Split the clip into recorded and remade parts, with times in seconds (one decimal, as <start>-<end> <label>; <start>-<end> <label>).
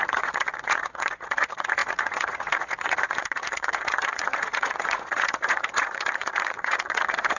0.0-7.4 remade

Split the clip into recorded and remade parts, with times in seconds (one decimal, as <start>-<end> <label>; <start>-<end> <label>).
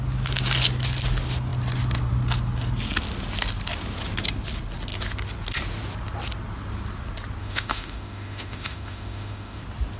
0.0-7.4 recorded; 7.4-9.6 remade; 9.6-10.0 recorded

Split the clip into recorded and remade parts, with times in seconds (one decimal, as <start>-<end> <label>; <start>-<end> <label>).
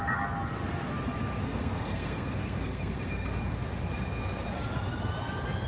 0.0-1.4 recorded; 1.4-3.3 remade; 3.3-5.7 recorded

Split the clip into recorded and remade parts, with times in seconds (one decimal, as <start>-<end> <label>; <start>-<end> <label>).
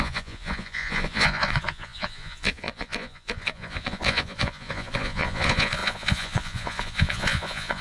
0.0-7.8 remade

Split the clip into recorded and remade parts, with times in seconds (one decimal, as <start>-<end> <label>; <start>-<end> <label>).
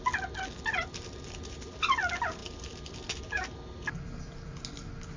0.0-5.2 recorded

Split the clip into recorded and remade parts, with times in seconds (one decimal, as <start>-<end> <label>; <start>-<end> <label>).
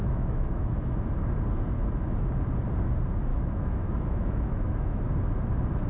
0.0-1.1 remade; 1.1-3.3 recorded; 3.3-5.0 remade; 5.0-5.9 recorded